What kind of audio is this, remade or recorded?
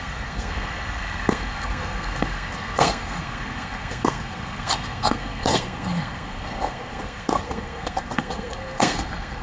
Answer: remade